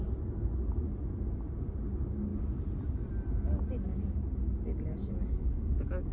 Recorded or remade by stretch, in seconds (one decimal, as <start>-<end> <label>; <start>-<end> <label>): 0.0-6.1 recorded